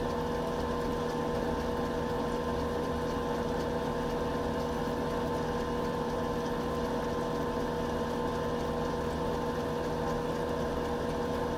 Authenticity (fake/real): real